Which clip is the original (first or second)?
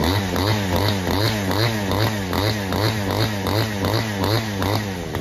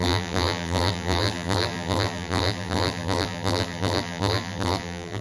first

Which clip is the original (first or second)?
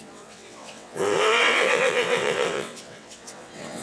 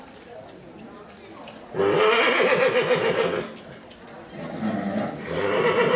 second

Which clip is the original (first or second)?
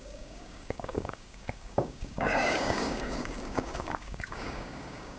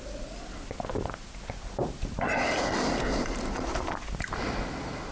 second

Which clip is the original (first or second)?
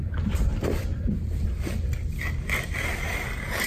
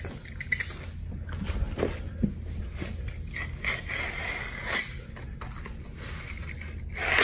second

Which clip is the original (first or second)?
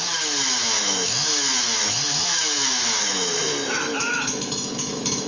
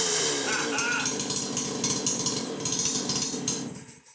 second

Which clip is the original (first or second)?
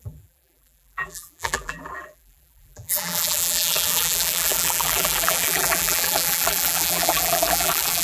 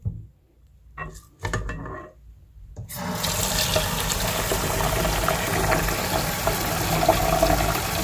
second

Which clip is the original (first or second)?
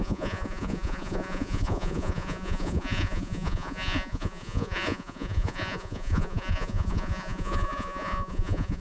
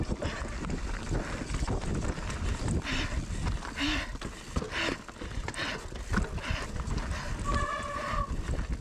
second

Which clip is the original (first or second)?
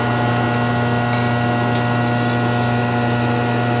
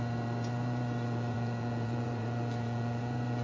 first